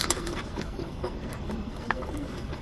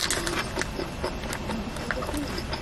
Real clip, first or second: second